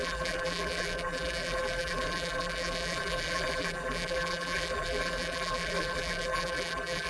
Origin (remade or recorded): remade